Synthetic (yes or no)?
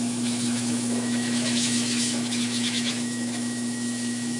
yes